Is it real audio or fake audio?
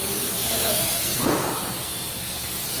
fake